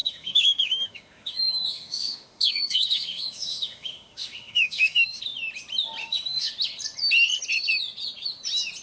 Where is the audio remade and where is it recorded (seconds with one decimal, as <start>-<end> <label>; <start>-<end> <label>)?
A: 0.0-5.2 remade; 5.2-6.0 recorded; 6.0-6.5 remade; 6.5-8.8 recorded